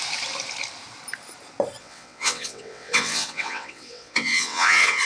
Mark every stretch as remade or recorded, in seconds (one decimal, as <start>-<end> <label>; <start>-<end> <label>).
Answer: 0.0-1.8 recorded; 1.8-5.0 remade